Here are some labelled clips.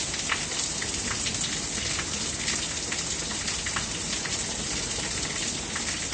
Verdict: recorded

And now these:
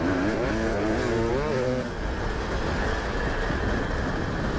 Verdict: recorded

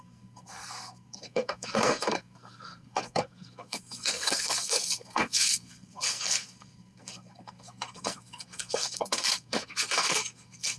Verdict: remade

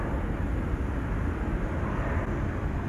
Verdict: recorded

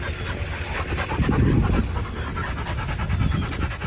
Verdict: recorded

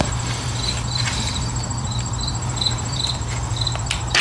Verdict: remade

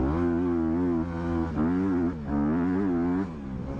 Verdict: recorded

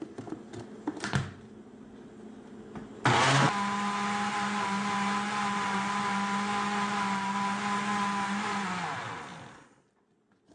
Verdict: recorded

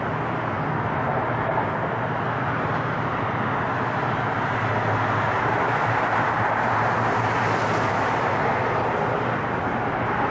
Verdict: recorded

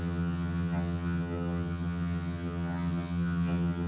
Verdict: remade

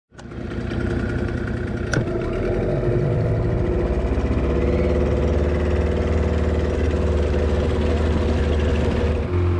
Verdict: recorded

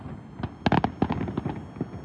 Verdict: recorded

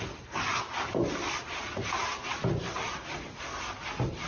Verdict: recorded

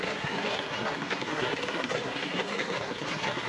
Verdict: remade